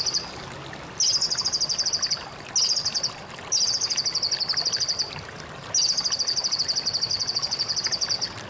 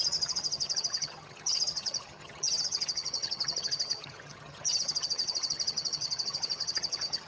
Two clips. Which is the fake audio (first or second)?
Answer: second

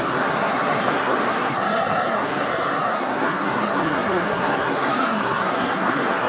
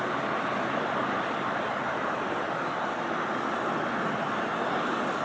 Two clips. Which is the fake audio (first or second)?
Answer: first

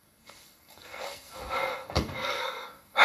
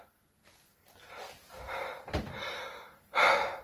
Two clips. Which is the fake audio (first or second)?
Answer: first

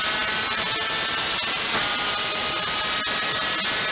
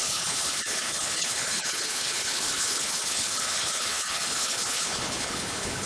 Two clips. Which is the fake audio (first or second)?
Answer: second